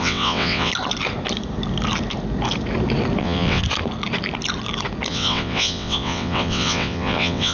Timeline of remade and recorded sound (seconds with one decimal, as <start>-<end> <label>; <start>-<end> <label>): 0.0-0.7 remade; 0.7-3.2 recorded; 3.2-3.6 remade; 3.6-5.1 recorded; 5.1-7.5 remade